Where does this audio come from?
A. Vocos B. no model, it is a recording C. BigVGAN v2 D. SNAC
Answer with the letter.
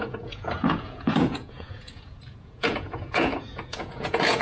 A